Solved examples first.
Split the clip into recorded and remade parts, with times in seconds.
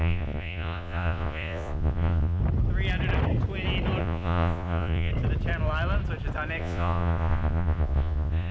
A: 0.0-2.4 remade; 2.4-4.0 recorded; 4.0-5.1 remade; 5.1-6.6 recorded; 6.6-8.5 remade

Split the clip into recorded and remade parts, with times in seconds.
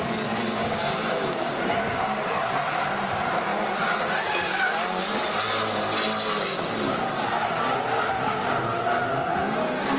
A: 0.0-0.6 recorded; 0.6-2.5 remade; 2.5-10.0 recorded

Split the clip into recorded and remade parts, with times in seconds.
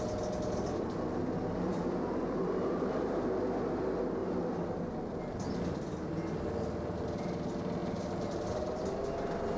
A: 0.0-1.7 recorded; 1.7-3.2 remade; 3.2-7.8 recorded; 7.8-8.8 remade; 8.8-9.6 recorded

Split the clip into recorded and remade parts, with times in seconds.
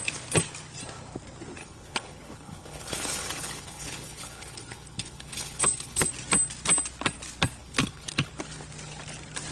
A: 0.0-1.6 recorded; 1.6-6.1 remade; 6.1-7.6 recorded; 7.6-8.3 remade; 8.3-9.5 recorded